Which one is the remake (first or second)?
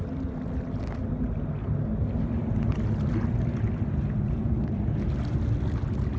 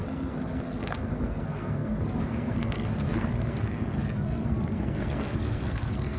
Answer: second